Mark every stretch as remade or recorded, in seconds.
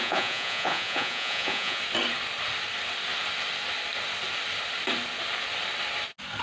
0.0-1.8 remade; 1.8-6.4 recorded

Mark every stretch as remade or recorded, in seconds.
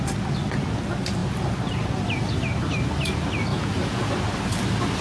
0.0-3.5 recorded; 3.5-4.1 remade; 4.1-5.0 recorded